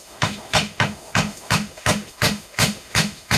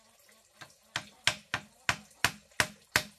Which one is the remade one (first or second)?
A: first